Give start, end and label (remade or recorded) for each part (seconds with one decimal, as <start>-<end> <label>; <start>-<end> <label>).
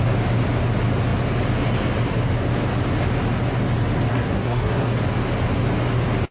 0.0-4.1 recorded; 4.1-5.0 remade; 5.0-6.3 recorded